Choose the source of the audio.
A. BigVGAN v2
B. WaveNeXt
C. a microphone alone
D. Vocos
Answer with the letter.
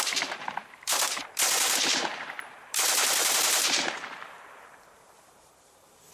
A